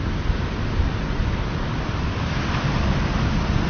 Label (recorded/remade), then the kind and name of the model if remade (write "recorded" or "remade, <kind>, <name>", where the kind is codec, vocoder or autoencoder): recorded